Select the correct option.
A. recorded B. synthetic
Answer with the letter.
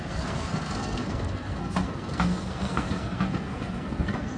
B